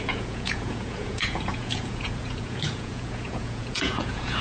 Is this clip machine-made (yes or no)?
yes